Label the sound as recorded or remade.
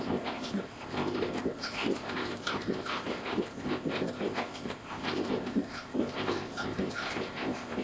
remade